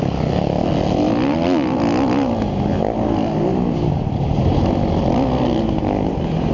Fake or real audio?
real